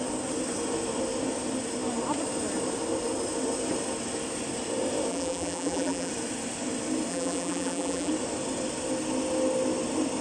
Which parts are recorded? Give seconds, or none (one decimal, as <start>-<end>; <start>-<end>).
0.0-5.1; 6.1-7.1; 8.1-10.2